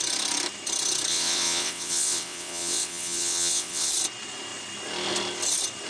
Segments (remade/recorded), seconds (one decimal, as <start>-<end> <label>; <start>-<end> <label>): 0.0-1.1 recorded; 1.1-3.9 remade; 3.9-5.9 recorded